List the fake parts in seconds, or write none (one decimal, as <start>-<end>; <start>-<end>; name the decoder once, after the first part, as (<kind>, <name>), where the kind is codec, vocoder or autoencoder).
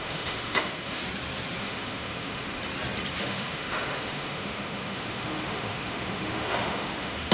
0.0-1.0 (autoencoder, DAC-VAE); 1.6-2.6; 3.2-7.3